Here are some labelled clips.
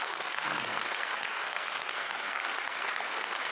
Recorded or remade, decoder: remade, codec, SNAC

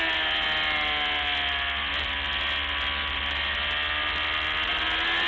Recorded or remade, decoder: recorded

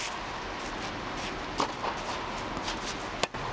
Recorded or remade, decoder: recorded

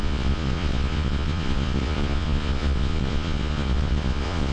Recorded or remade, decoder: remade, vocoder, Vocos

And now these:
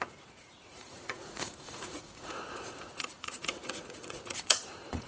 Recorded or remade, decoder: remade, vocoder, Vocos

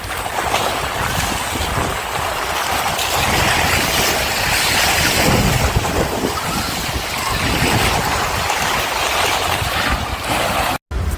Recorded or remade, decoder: recorded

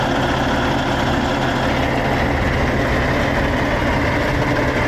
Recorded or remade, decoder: recorded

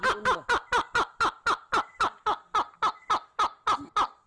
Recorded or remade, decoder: recorded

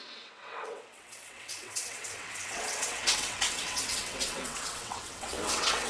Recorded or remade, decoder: remade, vocoder, WaveNeXt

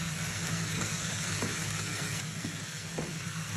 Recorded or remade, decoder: remade, codec, SNAC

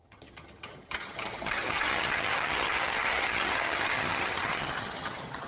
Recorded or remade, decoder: remade, vocoder, HiFi-GAN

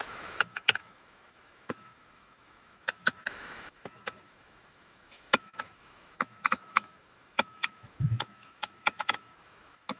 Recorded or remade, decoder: remade, autoencoder, DAC-VAE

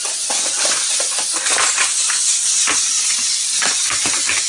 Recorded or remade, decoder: recorded